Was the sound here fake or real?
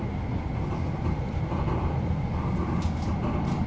real